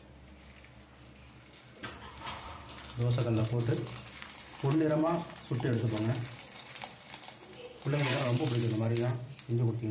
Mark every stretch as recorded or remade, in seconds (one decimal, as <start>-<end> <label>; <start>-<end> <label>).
0.0-1.8 recorded; 1.8-2.5 remade; 2.5-3.4 recorded; 3.4-8.4 remade; 8.4-9.9 recorded